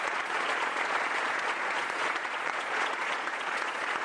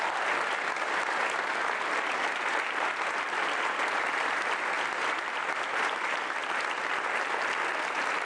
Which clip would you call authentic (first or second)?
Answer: second